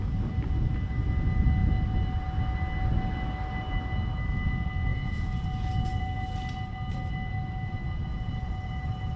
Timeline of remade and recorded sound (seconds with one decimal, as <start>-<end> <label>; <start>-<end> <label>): 0.0-4.9 recorded; 4.9-6.0 remade; 6.0-8.1 recorded; 8.1-9.2 remade

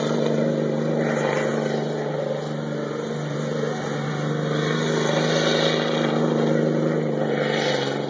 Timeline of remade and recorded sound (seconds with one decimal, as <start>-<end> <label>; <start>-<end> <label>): 0.0-8.1 recorded